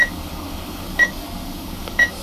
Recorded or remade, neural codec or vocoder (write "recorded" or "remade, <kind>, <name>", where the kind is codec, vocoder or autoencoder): remade, codec, DAC